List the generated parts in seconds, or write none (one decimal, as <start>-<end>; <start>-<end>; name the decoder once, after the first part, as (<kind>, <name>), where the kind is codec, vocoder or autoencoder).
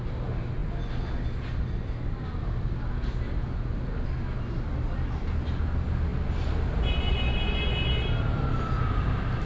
none